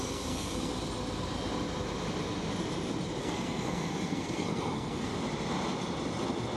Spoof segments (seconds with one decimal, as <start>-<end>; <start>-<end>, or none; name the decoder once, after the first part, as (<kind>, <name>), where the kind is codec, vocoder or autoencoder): 0.0-0.7 (codec, SNAC); 3.2-5.1